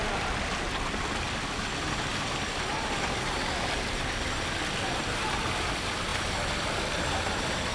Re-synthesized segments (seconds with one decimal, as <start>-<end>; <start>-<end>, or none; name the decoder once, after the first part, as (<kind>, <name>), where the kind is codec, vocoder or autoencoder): none